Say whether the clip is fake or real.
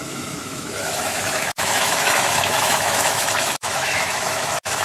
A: fake